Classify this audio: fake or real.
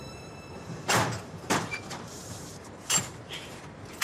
fake